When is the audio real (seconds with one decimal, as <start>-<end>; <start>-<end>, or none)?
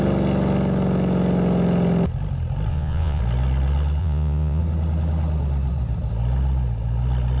0.0-2.7; 3.2-4.0; 4.6-7.4